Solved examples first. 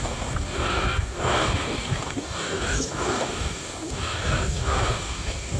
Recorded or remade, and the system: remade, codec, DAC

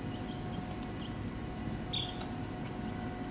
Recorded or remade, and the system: recorded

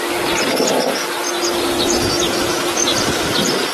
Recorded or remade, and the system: recorded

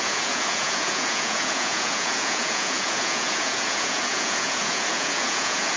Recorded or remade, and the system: remade, vocoder, Vocos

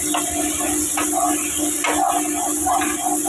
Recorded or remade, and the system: recorded